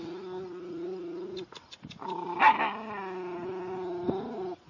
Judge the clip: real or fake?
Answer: real